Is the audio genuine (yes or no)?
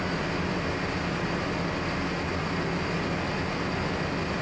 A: yes